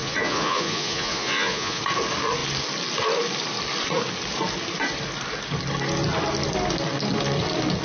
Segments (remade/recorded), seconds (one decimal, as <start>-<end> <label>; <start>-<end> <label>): 0.0-1.8 remade; 1.8-7.8 recorded